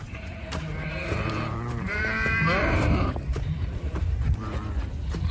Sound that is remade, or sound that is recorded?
remade